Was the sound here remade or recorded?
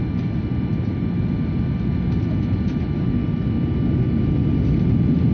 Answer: recorded